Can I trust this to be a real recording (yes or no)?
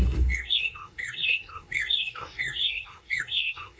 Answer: no